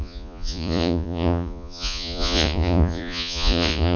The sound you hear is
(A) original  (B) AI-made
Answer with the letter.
B